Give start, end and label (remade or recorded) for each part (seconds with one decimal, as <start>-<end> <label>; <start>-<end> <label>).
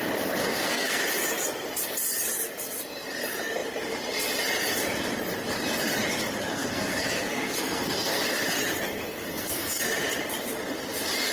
0.0-0.4 recorded; 0.4-1.0 remade; 1.0-6.5 recorded; 6.5-8.2 remade; 8.2-9.1 recorded; 9.1-9.8 remade; 9.8-11.3 recorded